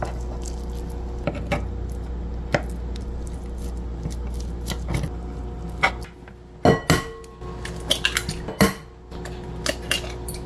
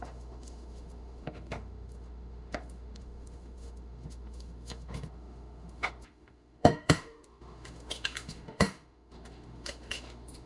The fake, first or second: second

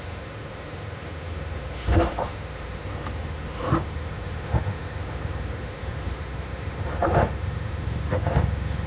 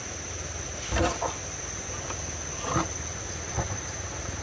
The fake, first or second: first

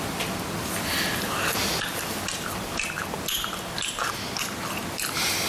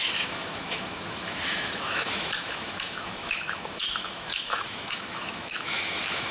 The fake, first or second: second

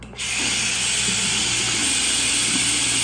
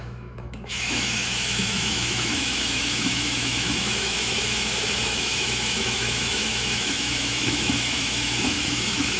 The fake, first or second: second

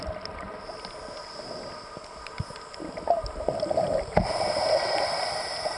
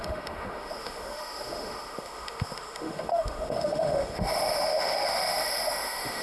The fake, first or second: second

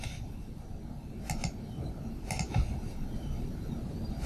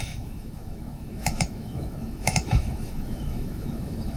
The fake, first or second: second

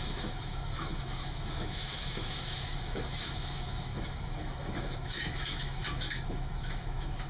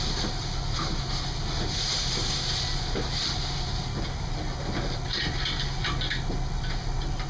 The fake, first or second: first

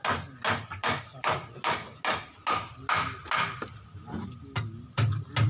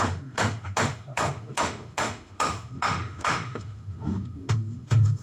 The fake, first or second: second